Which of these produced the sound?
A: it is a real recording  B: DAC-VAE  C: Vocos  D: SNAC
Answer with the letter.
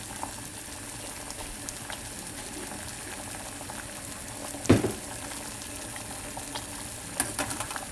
A